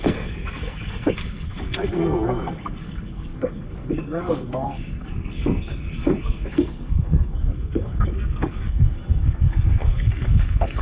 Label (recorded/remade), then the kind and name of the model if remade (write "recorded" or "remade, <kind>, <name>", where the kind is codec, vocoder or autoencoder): remade, codec, SNAC